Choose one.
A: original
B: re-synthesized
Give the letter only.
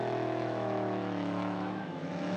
B